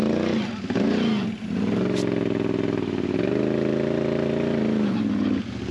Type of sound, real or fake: real